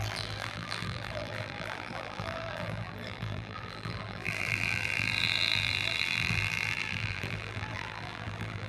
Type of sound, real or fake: fake